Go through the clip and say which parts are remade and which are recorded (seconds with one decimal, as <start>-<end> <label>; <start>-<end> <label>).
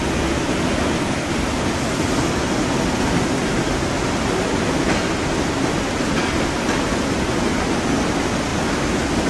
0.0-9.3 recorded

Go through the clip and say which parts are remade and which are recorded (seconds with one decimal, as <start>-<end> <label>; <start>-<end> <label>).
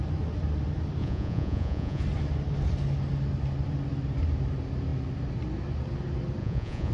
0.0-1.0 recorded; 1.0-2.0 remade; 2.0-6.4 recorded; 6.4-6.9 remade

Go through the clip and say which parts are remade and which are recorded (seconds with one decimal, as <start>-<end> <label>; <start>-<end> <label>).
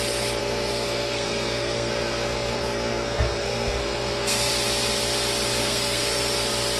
0.0-0.4 recorded; 0.4-4.5 remade; 4.5-5.6 recorded; 5.6-6.2 remade; 6.2-6.8 recorded